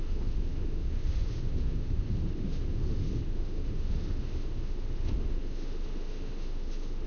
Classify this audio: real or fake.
fake